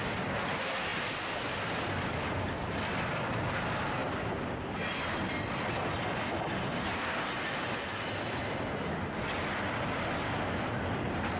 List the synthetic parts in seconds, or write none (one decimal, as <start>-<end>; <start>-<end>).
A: none